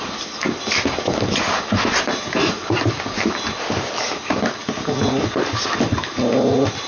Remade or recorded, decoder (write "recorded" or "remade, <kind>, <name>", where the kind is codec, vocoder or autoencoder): recorded